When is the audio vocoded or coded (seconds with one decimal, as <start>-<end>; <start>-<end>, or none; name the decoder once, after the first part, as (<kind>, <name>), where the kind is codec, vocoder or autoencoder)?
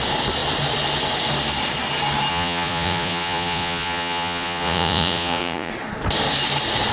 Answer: 2.3-5.7 (vocoder, Vocos)